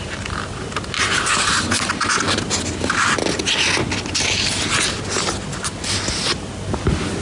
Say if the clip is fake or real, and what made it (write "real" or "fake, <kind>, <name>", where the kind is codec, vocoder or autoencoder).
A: real